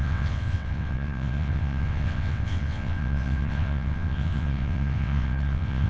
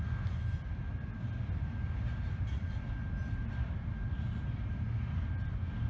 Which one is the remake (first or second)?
first